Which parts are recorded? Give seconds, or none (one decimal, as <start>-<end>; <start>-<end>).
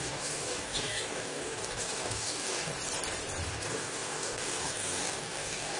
2.7-3.5